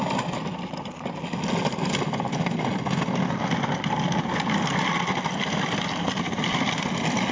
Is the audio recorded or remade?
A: recorded